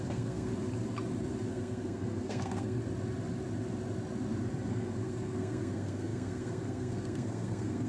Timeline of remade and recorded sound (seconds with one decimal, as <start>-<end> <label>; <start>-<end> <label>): 0.0-0.5 remade; 0.5-1.5 recorded; 1.5-2.8 remade; 2.8-4.7 recorded; 4.7-7.9 remade